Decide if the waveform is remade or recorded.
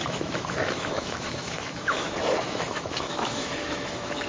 remade